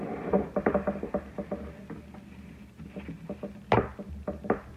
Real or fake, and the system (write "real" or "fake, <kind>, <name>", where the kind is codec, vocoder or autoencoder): real